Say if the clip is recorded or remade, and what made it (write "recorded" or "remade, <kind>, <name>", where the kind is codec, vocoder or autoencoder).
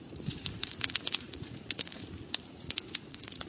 remade, vocoder, Vocos